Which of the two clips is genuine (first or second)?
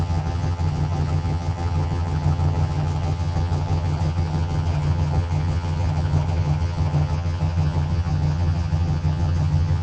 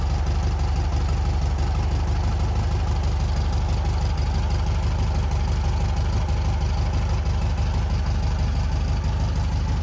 second